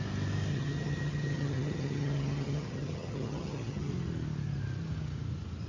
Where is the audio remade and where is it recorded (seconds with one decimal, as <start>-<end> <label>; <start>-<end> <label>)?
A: 0.0-0.5 recorded; 0.5-3.9 remade; 3.9-5.7 recorded